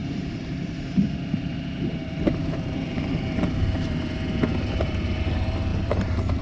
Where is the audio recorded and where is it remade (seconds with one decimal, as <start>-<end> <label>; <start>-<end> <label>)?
0.0-3.4 remade; 3.4-4.5 recorded; 4.5-5.3 remade; 5.3-6.4 recorded